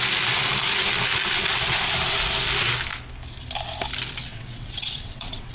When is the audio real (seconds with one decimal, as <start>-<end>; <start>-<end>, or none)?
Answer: 0.0-4.3